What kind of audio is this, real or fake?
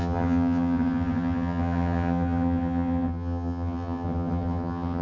fake